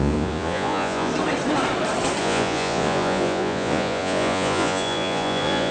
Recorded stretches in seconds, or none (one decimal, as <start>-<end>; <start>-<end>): 1.1-2.2